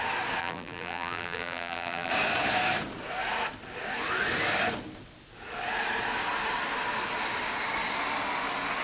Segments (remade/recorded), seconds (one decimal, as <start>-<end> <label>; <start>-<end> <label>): 0.0-0.4 recorded; 0.4-2.1 remade; 2.1-8.8 recorded